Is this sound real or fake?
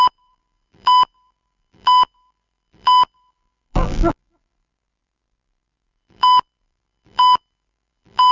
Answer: fake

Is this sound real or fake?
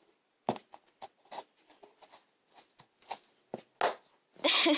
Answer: real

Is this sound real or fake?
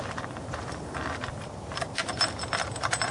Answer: real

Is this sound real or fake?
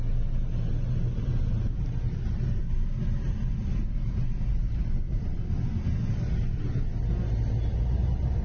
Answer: real